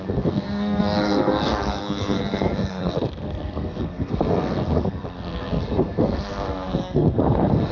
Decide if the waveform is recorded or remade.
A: remade